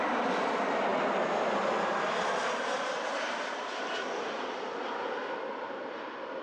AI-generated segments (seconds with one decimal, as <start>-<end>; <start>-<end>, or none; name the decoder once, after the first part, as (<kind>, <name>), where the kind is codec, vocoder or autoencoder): none